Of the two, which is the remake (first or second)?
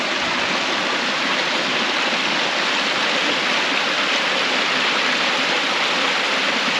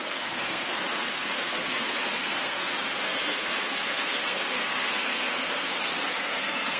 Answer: second